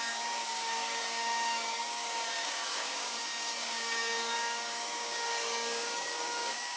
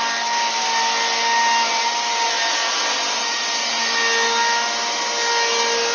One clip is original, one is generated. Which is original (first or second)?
second